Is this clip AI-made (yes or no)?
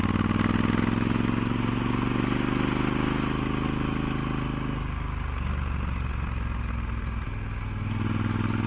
no